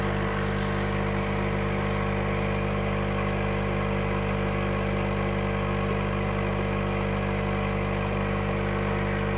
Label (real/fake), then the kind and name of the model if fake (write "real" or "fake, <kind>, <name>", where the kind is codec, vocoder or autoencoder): real